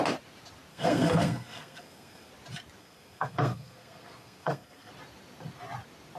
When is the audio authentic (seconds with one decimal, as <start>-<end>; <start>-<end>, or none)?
0.0-0.7; 2.3-2.8; 4.9-6.2